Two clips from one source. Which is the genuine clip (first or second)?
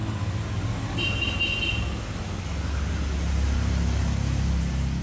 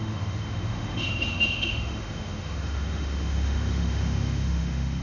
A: first